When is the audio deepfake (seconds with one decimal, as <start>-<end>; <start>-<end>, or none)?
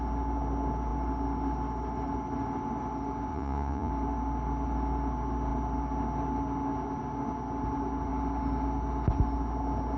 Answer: 3.3-3.9